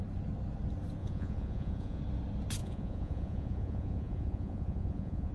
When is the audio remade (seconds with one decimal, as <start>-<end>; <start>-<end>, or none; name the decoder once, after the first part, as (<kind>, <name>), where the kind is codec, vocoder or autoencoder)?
1.0-2.0 (vocoder, Vocos); 2.6-5.3